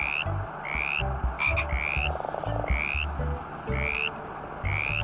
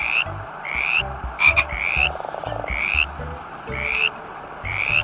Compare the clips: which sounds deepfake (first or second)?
second